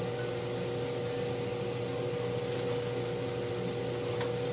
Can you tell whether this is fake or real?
real